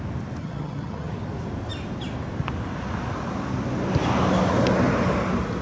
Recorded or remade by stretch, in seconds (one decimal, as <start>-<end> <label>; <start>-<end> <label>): 0.0-0.4 recorded; 0.4-1.1 remade; 1.1-5.6 recorded